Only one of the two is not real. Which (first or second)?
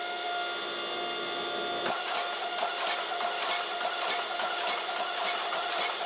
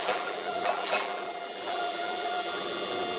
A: second